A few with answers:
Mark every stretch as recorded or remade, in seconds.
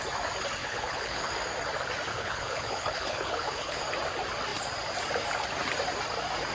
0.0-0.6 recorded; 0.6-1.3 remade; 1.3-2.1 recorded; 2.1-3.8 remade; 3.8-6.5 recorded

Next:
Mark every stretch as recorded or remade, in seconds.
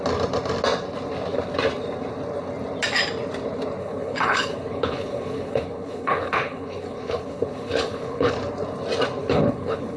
0.0-3.8 recorded; 3.8-8.3 remade; 8.3-9.2 recorded; 9.2-10.0 remade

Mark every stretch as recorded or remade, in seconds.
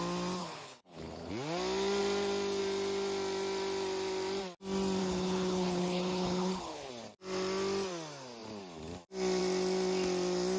0.0-0.4 recorded; 0.4-1.3 remade; 1.3-5.0 recorded; 5.0-6.9 remade; 6.9-10.6 recorded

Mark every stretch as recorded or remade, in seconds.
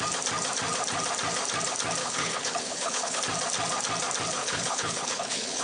0.0-2.0 recorded; 2.0-3.2 remade; 3.2-4.4 recorded; 4.4-5.6 remade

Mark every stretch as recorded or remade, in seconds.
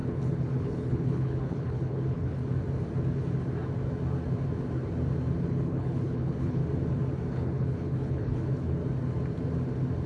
0.0-2.4 remade; 2.4-5.4 recorded; 5.4-6.6 remade; 6.6-7.3 recorded; 7.3-8.8 remade; 8.8-10.1 recorded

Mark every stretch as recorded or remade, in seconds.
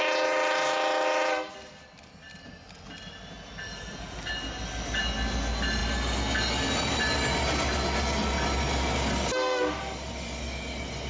0.0-11.1 recorded